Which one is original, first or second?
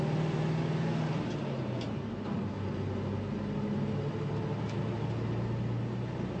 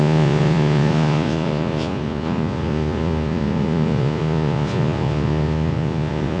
first